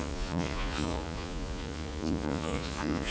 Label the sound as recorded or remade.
remade